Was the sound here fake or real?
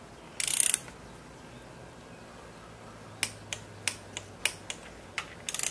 real